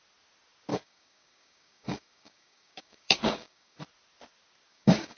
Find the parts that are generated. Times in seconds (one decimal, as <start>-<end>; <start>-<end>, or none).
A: 0.7-3.8; 4.7-5.2